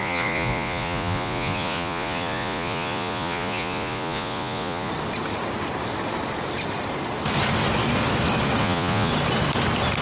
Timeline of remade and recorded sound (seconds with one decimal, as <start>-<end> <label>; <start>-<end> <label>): 0.0-4.9 remade; 4.9-8.6 recorded; 8.6-9.1 remade; 9.1-10.0 recorded